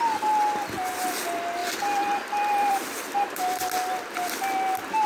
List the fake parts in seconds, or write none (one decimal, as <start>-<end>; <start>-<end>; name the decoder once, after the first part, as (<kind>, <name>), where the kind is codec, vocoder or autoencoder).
1.6-3.7 (vocoder, BigVGAN v2)